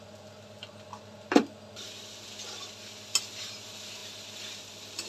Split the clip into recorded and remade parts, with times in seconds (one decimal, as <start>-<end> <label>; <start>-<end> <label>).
0.0-5.1 recorded